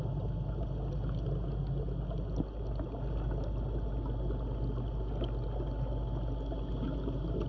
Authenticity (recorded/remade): recorded